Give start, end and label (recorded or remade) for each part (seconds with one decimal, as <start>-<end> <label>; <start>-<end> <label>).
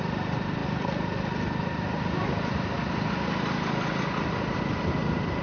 0.0-5.4 recorded